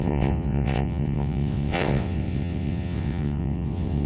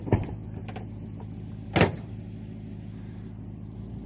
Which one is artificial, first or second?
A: first